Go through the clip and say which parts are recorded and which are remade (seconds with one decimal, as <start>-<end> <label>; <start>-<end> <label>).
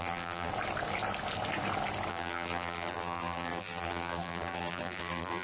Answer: 0.0-0.5 remade; 0.5-2.1 recorded; 2.1-5.4 remade